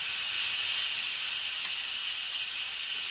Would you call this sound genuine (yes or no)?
yes